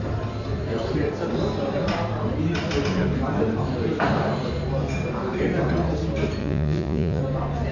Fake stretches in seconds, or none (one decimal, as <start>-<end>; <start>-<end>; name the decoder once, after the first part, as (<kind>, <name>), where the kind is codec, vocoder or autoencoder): 6.4-7.2 (vocoder, Vocos)